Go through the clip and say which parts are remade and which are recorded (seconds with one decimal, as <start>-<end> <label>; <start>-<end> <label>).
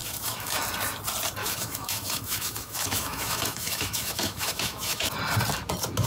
0.0-0.6 remade; 0.6-1.4 recorded; 1.4-5.1 remade; 5.1-6.1 recorded